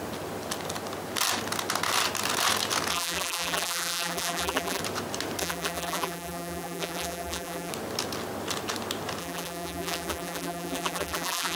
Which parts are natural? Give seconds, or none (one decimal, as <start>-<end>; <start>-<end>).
0.0-2.9; 4.8-5.4; 7.7-9.2